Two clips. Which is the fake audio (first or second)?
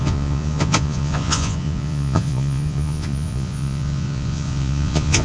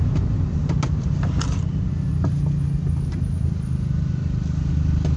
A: first